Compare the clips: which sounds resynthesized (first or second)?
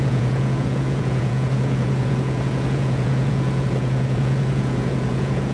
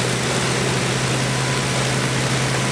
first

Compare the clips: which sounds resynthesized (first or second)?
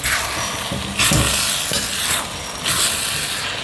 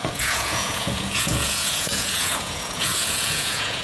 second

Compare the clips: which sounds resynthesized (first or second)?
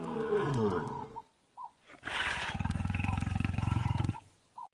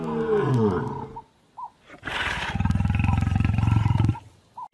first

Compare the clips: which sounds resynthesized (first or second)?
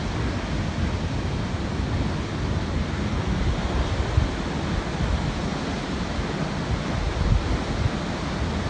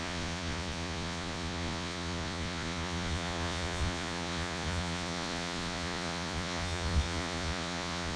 second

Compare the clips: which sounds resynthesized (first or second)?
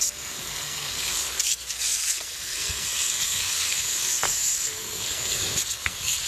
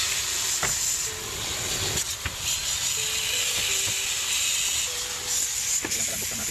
first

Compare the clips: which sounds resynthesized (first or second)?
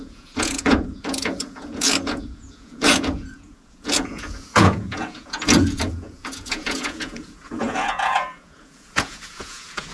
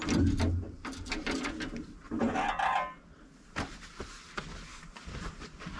first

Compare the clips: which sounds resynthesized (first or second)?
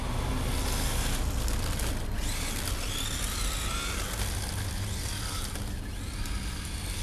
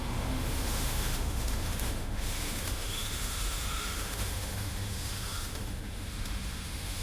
second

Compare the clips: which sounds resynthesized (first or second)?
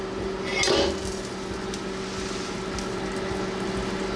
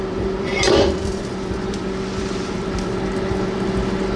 second